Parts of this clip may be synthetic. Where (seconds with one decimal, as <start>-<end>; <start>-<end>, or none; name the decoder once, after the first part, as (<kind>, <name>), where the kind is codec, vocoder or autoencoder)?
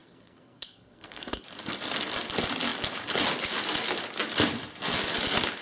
0.0-1.4 (codec, SNAC)